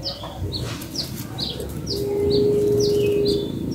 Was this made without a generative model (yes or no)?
yes